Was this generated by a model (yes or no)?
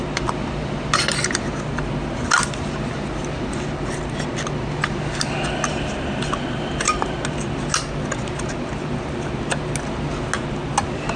no